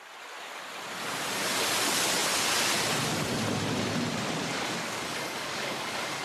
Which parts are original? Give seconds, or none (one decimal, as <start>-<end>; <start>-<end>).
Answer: 0.0-4.5